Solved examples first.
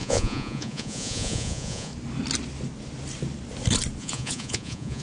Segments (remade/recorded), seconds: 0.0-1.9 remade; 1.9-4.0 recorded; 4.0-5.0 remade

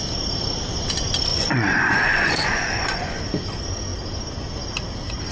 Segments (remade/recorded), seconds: 0.0-1.3 recorded; 1.3-3.2 remade; 3.2-5.3 recorded

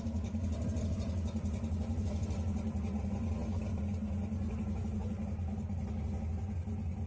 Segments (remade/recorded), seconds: 0.0-7.1 recorded